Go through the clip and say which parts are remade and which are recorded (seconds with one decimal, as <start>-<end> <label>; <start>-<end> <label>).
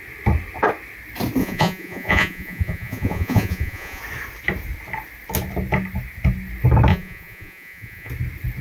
0.0-1.4 recorded; 1.4-4.0 remade; 4.0-6.9 recorded; 6.9-8.1 remade; 8.1-8.6 recorded